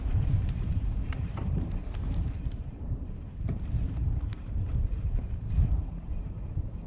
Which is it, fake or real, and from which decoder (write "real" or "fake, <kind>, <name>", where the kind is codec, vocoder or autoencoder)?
fake, vocoder, BigVGAN v2